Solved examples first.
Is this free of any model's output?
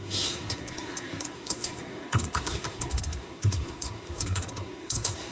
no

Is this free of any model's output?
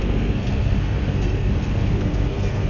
no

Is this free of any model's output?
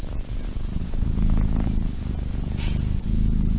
no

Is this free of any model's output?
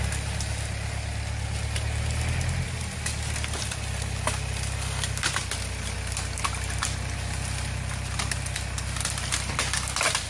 yes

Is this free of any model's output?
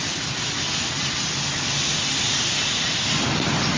yes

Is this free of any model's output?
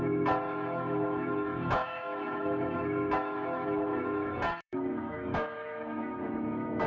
no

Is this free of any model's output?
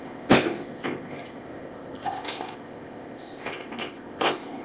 no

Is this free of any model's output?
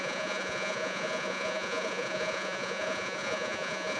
no